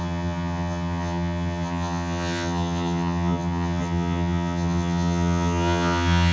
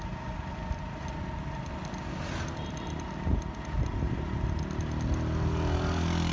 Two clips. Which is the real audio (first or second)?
second